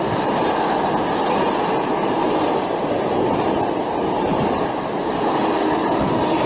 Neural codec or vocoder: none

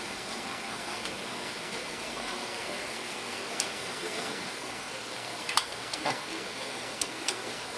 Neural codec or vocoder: codec, SNAC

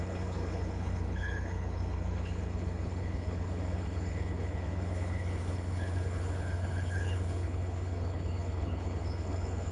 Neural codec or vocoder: codec, HILCodec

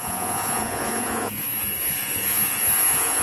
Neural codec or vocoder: vocoder, Vocos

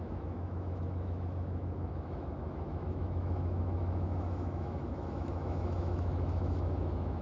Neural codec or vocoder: autoencoder, DAC-VAE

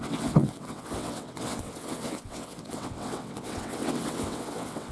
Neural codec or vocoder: vocoder, WaveNeXt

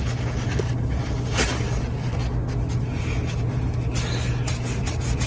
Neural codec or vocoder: none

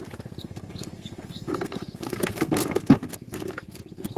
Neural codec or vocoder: codec, SNAC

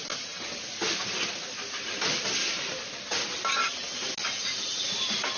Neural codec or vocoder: none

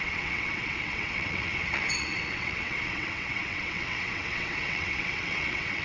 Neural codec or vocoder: vocoder, WaveNeXt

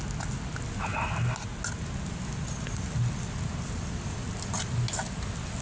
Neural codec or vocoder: none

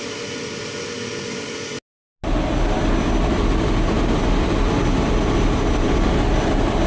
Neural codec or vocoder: none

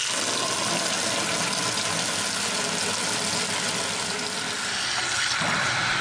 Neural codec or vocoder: none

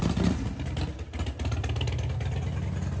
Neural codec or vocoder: none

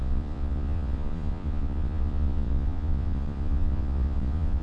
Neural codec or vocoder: vocoder, Vocos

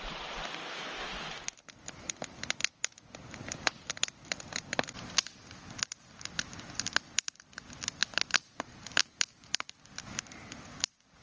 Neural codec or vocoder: none